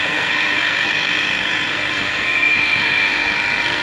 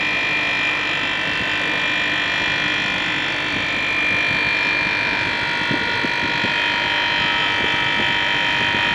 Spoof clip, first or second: first